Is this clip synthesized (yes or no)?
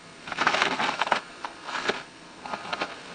yes